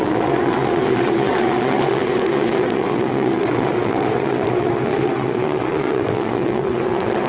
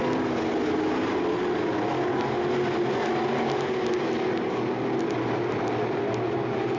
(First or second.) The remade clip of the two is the first